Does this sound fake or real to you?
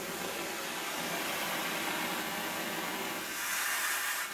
real